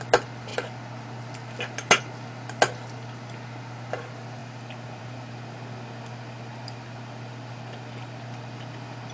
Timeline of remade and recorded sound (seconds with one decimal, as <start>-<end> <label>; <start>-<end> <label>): 0.0-9.1 recorded